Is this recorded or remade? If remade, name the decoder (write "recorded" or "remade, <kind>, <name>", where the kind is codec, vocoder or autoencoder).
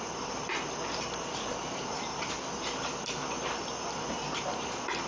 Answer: remade, vocoder, BigVGAN v2